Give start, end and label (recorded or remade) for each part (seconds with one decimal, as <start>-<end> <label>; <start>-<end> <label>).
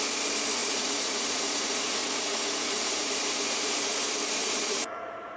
0.0-0.6 recorded; 0.6-3.8 remade; 3.8-4.4 recorded; 4.4-5.4 remade